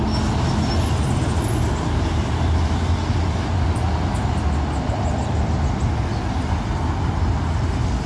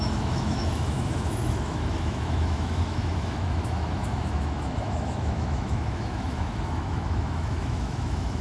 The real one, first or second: first